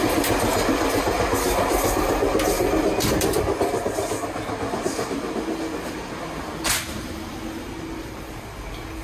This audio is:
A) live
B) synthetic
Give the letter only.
A